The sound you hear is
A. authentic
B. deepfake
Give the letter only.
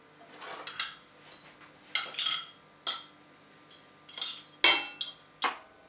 A